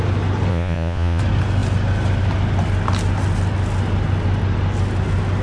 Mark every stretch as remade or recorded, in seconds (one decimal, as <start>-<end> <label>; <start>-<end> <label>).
0.0-0.5 recorded; 0.5-1.2 remade; 1.2-5.4 recorded